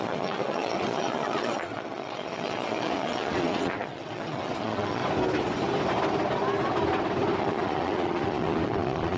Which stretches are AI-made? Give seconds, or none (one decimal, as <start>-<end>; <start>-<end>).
0.0-5.0; 7.4-9.2